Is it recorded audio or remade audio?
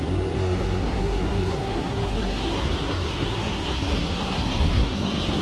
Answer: remade